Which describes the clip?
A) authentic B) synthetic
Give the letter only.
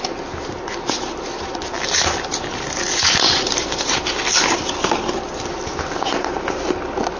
A